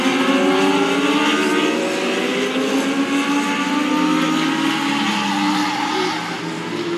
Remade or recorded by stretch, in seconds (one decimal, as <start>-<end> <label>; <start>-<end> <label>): 0.0-7.0 recorded